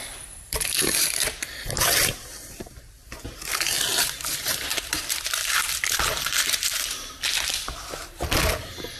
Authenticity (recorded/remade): remade